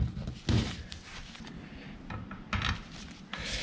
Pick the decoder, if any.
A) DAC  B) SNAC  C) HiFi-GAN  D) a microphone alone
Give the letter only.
D